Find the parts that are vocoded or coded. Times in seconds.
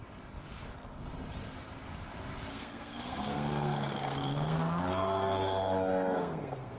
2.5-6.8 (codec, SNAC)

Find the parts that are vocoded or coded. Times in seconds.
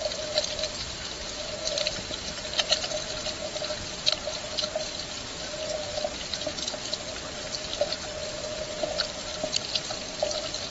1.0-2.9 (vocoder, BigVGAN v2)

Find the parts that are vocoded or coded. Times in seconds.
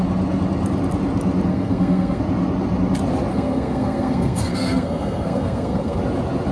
1.5-2.2 (codec, SNAC); 3.3-6.0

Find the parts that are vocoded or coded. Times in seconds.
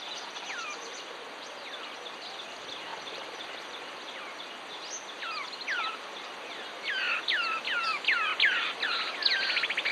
2.9-4.2 (vocoder, BigVGAN v2)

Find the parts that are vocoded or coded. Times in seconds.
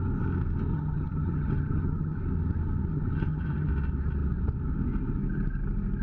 0.7-2.2 (vocoder, HiFi-GAN); 2.9-3.7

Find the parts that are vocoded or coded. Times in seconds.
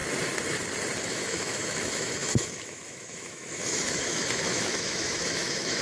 1.0-5.8 (autoencoder, DAC-VAE)